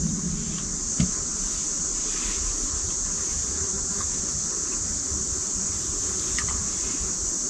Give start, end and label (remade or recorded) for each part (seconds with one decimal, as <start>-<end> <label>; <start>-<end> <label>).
0.0-7.5 recorded